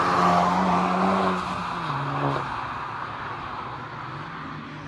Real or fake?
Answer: real